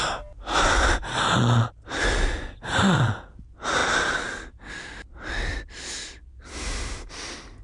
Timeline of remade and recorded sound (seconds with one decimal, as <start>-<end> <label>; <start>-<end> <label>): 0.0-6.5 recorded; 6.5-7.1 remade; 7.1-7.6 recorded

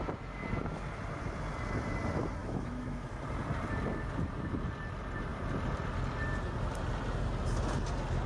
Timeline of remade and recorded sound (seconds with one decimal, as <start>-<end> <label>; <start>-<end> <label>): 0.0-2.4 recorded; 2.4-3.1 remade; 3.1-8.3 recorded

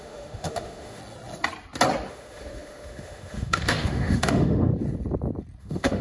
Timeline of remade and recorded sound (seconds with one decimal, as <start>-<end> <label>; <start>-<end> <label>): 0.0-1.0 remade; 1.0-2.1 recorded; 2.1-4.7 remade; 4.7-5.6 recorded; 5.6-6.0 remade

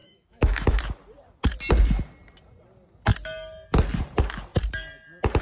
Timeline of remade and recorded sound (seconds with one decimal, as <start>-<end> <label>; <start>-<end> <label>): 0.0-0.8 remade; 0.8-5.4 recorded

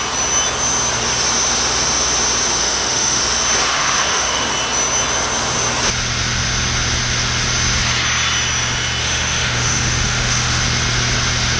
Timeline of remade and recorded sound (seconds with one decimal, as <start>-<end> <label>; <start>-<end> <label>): 0.0-2.6 recorded; 2.6-3.2 remade; 3.2-3.7 recorded; 3.7-4.5 remade; 4.5-9.0 recorded; 9.0-10.6 remade; 10.6-11.6 recorded

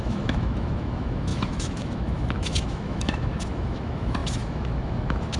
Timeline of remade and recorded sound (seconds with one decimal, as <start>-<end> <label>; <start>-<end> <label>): 0.0-5.4 remade